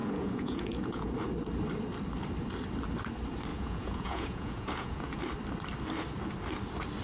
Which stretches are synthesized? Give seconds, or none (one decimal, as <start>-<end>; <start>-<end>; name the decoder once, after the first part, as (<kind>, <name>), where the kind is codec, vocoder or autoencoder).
0.0-1.1 (vocoder, Vocos); 3.5-5.2